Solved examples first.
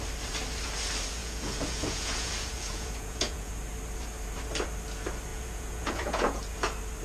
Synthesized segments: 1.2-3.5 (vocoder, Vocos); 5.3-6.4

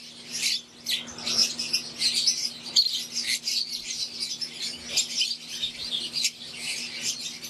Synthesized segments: none

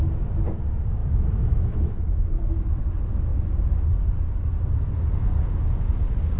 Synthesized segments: 1.0-2.3 (autoencoder, DAC-VAE)

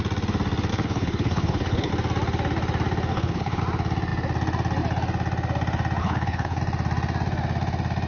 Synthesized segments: 0.7-1.9 (codec, HILCodec); 3.1-3.6; 6.0-6.6

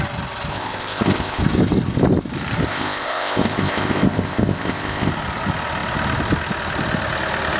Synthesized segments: 0.5-1.4 (codec, ZipCodec); 2.7-5.1

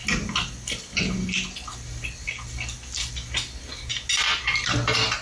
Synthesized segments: none

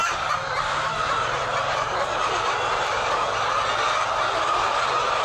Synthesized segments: 0.0-3.1 (vocoder, BigVGAN v2)